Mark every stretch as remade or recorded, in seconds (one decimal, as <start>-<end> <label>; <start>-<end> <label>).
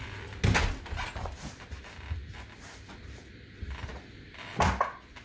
0.0-5.2 recorded